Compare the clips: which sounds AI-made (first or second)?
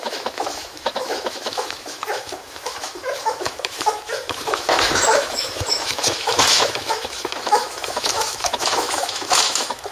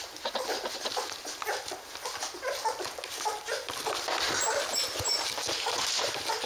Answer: first